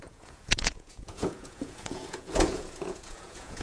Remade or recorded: remade